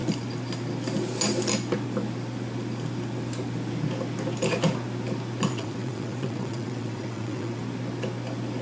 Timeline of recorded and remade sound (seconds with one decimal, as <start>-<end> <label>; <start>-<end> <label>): 0.0-5.5 recorded; 5.5-7.6 remade; 7.6-8.6 recorded